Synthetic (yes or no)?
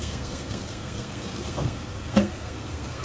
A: yes